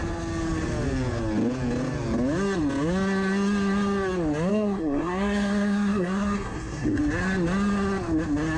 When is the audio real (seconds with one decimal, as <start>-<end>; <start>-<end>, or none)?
0.0-4.5; 7.0-8.6